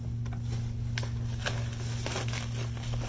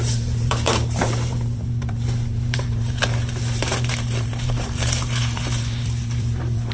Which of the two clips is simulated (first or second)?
second